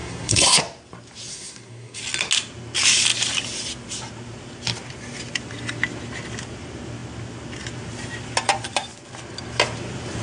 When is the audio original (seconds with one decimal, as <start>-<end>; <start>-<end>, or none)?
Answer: 0.6-1.3; 2.0-10.2